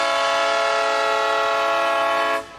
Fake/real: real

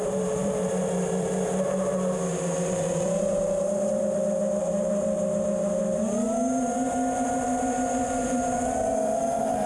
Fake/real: fake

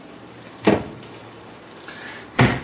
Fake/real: fake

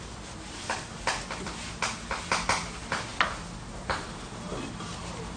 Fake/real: real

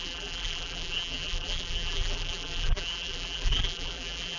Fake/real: fake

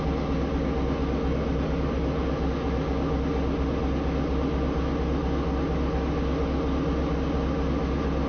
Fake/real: real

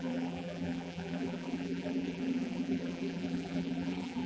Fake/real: fake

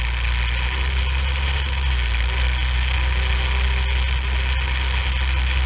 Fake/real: real